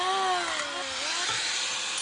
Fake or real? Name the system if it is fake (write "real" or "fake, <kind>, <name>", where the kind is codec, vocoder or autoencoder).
real